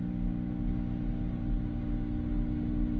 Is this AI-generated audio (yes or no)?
no